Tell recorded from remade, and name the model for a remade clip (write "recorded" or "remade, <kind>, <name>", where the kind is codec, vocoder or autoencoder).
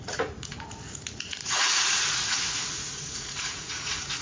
remade, vocoder, Vocos